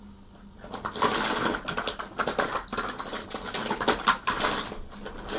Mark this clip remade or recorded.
recorded